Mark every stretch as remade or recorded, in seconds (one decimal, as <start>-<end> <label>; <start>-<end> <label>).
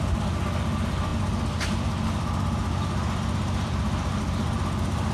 0.0-5.1 recorded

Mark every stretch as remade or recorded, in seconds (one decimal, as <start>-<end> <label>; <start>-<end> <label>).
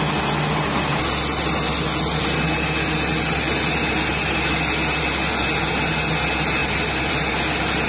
0.0-7.9 recorded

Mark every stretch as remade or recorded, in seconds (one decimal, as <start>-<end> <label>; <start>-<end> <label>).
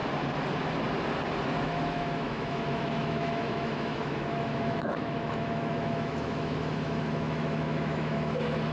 0.0-1.6 recorded; 1.6-8.7 remade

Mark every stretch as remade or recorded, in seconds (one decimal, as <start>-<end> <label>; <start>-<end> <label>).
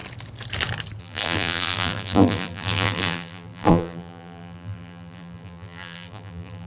0.0-1.0 recorded; 1.0-6.7 remade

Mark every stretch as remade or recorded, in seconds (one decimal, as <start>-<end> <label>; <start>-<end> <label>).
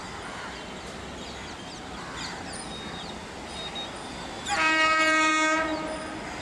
0.0-4.1 recorded; 4.1-5.3 remade; 5.3-6.4 recorded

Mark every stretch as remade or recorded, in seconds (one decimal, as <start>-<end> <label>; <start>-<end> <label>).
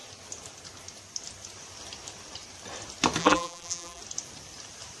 0.0-3.2 recorded; 3.2-4.0 remade; 4.0-5.0 recorded